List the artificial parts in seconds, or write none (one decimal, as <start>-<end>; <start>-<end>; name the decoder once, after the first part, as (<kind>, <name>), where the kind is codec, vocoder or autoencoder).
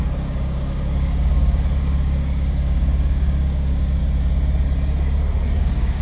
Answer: 0.0-4.0 (codec, DAC); 5.6-6.0